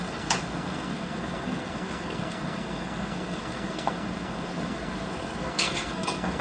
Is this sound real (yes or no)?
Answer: no